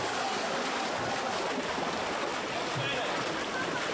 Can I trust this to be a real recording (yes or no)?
yes